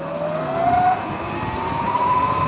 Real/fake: real